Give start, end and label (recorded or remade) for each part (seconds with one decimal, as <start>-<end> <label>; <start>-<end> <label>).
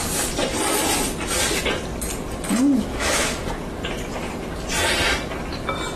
0.0-2.9 recorded; 2.9-3.5 remade; 3.5-6.0 recorded